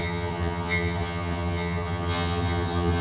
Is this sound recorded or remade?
remade